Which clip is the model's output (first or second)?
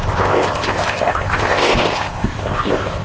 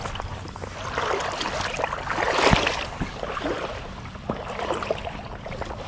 first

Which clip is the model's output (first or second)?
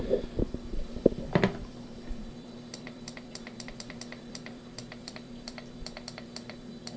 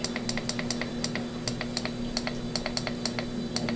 first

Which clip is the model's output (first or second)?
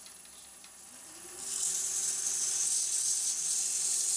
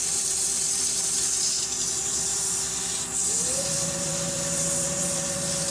second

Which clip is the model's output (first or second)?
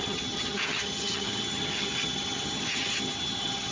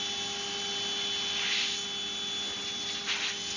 first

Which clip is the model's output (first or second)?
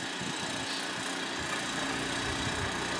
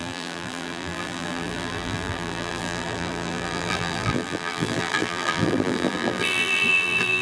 second